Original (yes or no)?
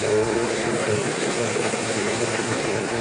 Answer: no